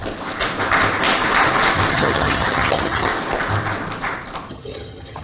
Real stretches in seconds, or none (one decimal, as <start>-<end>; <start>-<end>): 0.0-1.9; 3.1-4.5